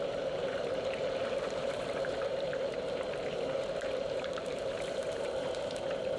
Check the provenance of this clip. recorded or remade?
remade